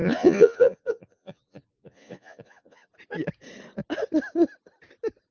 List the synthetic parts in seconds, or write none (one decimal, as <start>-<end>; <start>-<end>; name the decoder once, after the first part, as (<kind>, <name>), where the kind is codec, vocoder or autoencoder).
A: 0.0-2.9 (vocoder, Vocos)